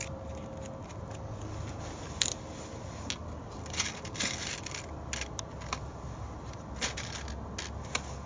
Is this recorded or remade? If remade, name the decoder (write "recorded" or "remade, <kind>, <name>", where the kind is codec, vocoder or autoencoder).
recorded